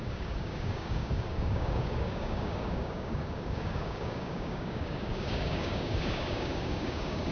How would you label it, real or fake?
fake